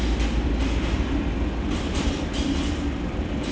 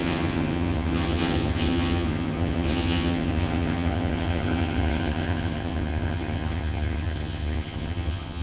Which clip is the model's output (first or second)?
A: second